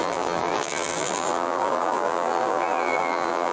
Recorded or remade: remade